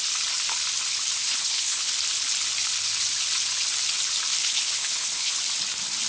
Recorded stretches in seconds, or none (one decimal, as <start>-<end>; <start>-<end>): 0.0-1.2; 1.9-4.4; 5.3-6.1